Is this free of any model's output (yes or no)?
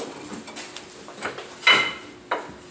yes